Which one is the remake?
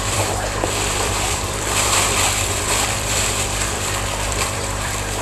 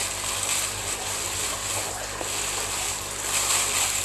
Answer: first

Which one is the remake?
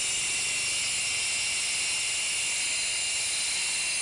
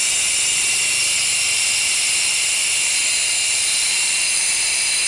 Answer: second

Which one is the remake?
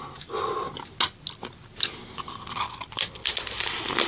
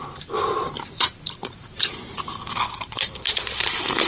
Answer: second